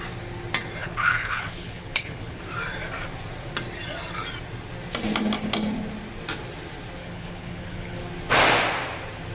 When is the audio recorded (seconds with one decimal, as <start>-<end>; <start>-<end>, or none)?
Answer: 0.0-0.8; 2.4-7.0; 8.0-9.3